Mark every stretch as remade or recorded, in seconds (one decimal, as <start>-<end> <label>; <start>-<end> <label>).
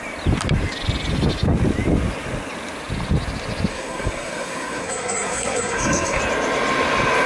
0.0-3.7 recorded; 3.7-6.2 remade; 6.2-7.3 recorded